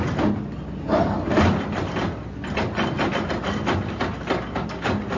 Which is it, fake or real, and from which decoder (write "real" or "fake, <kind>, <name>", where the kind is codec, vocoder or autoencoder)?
real